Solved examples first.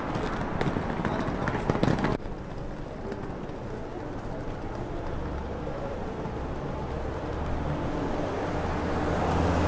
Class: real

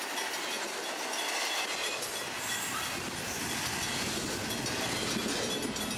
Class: real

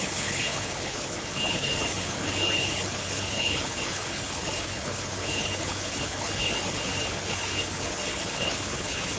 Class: fake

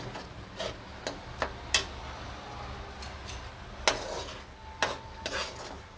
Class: real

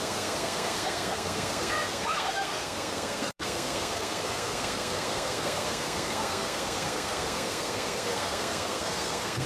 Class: fake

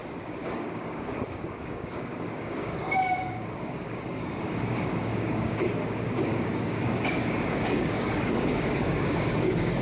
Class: fake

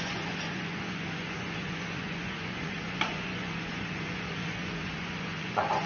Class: fake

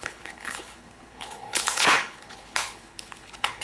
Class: fake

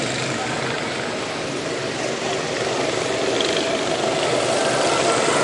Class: real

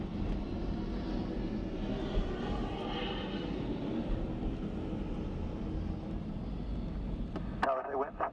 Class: real